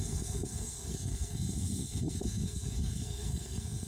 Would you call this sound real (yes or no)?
no